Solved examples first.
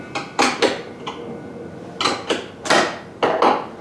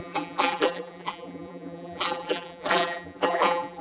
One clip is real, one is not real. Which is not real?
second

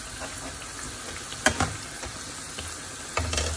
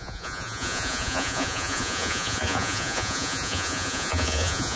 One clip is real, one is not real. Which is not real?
second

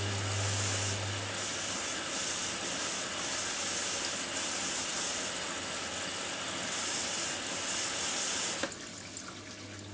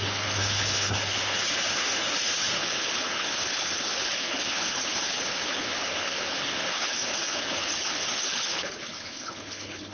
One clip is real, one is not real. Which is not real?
second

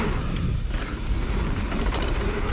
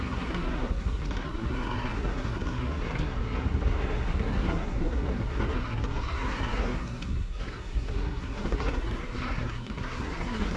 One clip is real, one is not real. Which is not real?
second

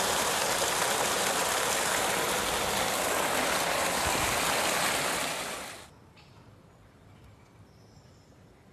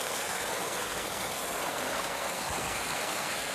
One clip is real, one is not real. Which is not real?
second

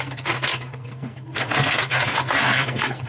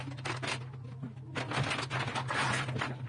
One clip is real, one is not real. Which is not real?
first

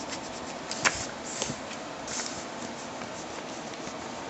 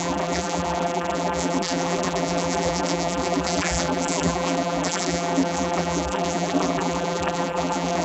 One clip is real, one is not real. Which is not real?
second